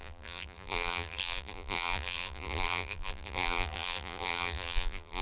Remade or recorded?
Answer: remade